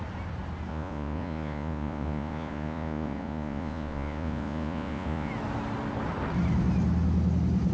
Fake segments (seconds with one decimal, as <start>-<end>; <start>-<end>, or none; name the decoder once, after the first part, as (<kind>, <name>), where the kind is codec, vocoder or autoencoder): 0.7-5.3 (vocoder, Vocos)